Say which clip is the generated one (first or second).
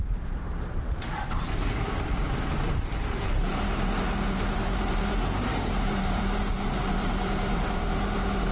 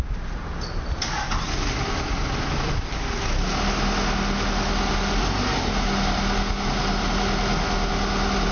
first